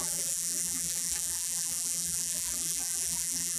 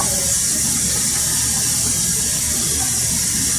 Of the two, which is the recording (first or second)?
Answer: second